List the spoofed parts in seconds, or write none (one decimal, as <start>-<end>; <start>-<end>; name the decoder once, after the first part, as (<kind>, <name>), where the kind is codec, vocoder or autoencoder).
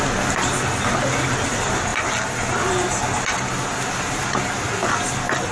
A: none